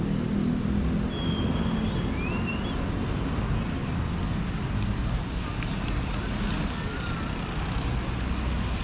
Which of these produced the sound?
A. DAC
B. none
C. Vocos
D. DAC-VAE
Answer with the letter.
B